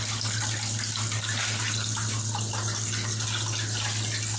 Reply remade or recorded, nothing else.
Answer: recorded